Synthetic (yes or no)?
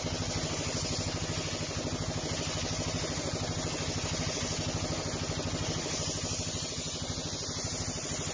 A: no